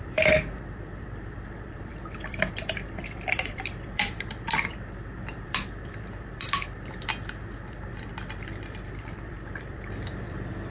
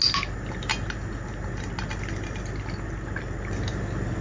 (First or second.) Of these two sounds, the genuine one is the second